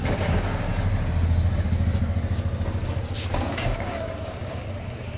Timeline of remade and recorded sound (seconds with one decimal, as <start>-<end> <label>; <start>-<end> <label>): 0.0-0.7 remade; 0.7-3.3 recorded; 3.3-5.2 remade